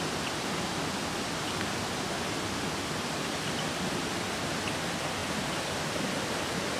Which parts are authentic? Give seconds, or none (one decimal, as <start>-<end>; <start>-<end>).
0.0-6.8